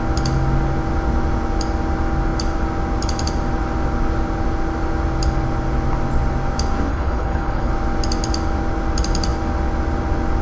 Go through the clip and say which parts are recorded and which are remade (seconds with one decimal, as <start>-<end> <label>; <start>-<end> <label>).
0.0-6.9 recorded; 6.9-7.7 remade; 7.7-10.4 recorded